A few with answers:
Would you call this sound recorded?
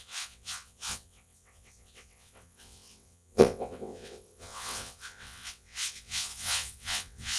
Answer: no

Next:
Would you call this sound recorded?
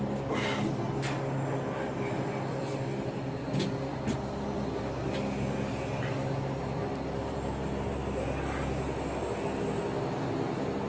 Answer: yes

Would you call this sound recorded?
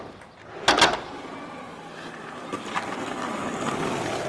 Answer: yes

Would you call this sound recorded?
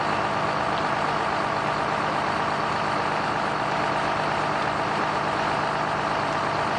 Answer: yes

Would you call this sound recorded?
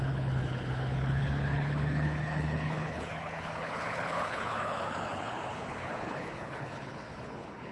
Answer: no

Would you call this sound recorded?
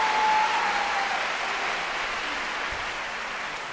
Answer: yes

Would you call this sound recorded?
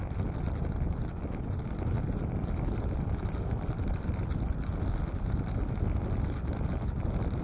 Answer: yes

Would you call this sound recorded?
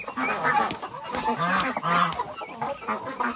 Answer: yes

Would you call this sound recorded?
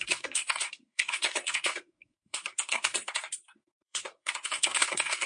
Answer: no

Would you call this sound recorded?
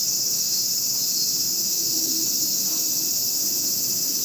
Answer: no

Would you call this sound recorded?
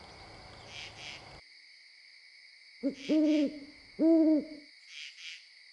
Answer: yes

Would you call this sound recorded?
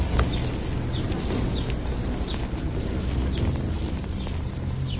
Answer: yes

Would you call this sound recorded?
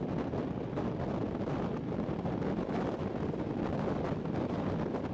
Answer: yes